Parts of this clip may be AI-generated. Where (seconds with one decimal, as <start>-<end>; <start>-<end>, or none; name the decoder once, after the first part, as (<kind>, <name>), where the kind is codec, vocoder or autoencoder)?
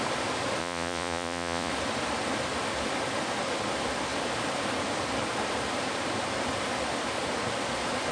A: 0.6-1.7 (vocoder, Vocos)